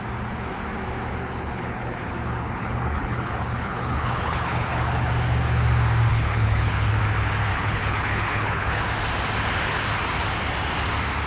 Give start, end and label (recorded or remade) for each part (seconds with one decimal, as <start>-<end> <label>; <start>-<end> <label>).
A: 0.0-1.2 recorded; 1.2-5.1 remade; 5.1-6.1 recorded; 6.1-7.0 remade; 7.0-7.5 recorded; 7.5-8.8 remade; 8.8-11.3 recorded